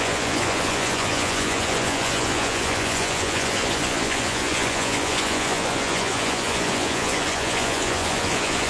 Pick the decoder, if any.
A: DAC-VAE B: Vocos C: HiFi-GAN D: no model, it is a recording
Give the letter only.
B